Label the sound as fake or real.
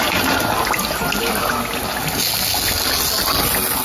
real